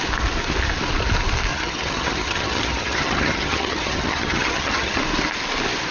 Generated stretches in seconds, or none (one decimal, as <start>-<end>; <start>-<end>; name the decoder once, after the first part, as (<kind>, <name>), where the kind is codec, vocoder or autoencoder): 1.5-5.0 (vocoder, HiFi-GAN)